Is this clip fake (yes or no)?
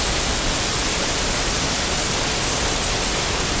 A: no